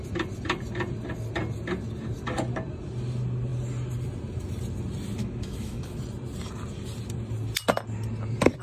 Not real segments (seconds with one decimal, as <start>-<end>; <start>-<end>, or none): 5.2-6.0